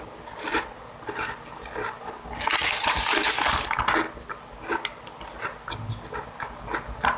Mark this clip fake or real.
real